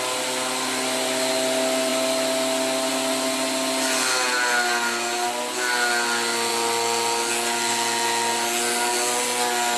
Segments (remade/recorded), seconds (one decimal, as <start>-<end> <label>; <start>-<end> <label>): 0.0-9.8 recorded